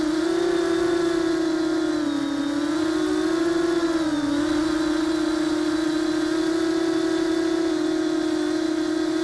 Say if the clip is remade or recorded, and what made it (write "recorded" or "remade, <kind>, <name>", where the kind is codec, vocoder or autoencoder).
recorded